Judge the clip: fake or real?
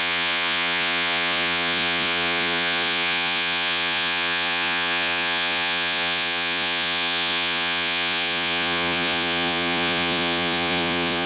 fake